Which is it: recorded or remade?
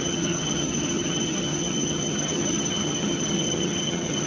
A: remade